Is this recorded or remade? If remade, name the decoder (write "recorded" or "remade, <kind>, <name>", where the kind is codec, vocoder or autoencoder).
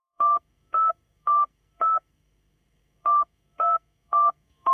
remade, codec, SNAC